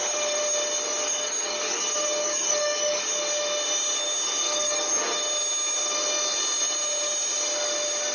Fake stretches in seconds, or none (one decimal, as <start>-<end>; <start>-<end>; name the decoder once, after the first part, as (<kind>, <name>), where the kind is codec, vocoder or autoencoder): 1.0-1.8 (codec, DAC); 2.2-3.1; 4.4-4.9